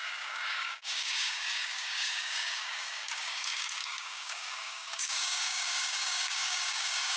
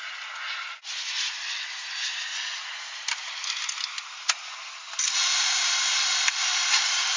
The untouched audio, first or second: second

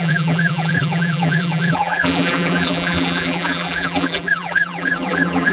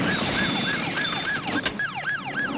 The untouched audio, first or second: second